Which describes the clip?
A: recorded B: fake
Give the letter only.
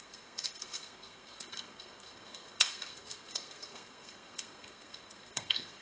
B